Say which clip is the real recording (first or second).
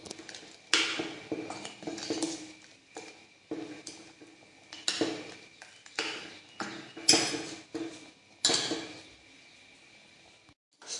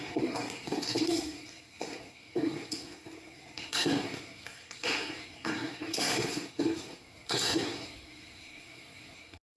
first